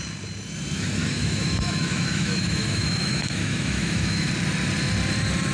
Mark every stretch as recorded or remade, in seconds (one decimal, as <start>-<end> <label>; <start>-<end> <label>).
0.0-1.0 recorded; 1.0-4.3 remade; 4.3-5.5 recorded